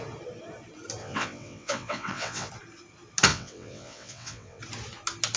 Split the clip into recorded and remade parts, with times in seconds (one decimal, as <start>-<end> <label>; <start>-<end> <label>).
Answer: 0.0-1.0 recorded; 1.0-2.5 remade; 2.5-3.3 recorded; 3.3-4.6 remade; 4.6-5.4 recorded